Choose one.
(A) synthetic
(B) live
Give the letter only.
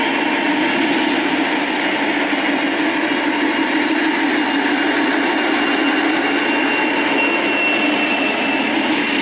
B